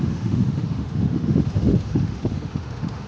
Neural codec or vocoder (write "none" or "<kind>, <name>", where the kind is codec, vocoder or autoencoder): autoencoder, DAC-VAE